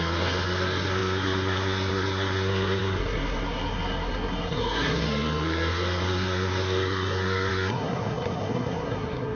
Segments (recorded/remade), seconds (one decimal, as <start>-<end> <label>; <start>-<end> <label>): 0.0-9.4 remade